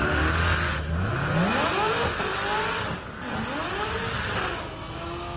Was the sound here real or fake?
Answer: real